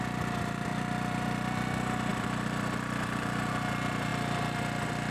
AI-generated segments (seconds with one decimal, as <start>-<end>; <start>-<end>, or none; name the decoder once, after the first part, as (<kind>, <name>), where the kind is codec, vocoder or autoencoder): 0.7-1.7 (vocoder, BigVGAN v2); 2.1-3.5